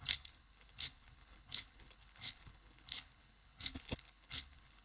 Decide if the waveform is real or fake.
fake